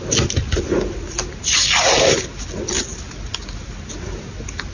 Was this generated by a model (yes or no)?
no